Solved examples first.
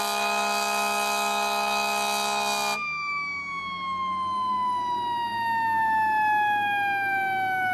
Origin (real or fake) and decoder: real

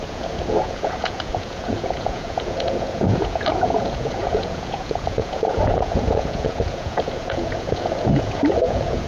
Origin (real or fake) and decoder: fake, vocoder, Vocos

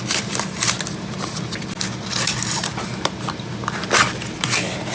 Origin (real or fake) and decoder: real